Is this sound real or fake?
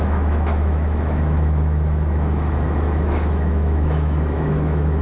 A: fake